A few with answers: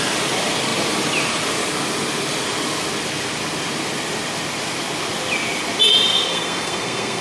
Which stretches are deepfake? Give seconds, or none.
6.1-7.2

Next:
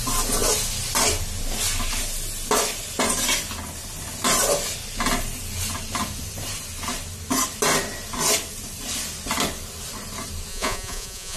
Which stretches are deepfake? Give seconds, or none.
10.5-11.4

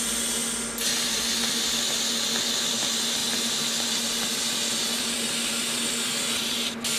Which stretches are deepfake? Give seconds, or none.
none